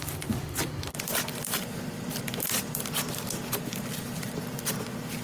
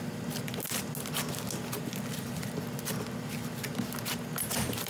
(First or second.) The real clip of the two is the second